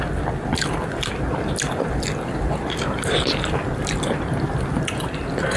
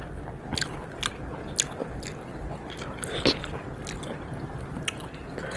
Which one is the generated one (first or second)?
first